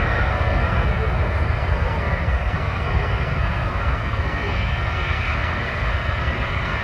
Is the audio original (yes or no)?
no